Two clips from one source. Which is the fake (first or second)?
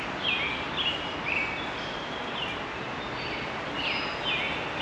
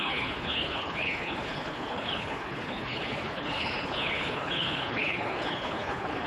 second